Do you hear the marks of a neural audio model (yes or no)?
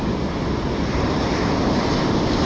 no